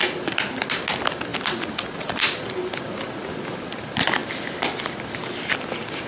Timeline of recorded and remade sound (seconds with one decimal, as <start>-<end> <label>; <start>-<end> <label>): 0.0-6.1 recorded